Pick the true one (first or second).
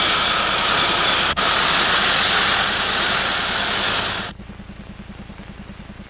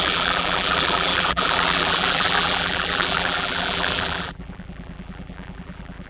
first